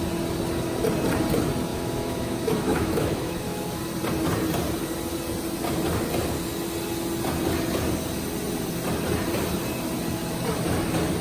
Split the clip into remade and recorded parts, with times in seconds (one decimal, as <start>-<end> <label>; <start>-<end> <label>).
0.0-1.7 recorded; 1.7-3.8 remade; 3.8-11.2 recorded